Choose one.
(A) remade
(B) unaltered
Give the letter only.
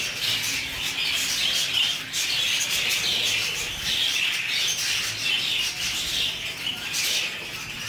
B